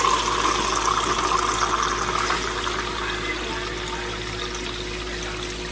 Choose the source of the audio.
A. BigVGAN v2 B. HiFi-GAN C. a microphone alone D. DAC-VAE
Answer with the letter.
C